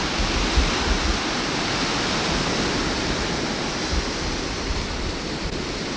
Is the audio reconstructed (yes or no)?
no